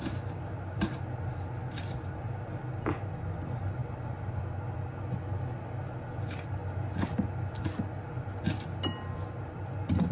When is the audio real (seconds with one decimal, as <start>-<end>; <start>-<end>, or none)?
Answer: 0.0-3.8; 4.4-10.1